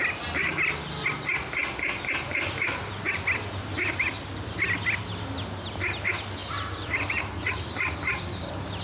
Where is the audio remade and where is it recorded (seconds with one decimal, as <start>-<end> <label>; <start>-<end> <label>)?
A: 0.0-6.4 recorded; 6.4-7.7 remade; 7.7-8.8 recorded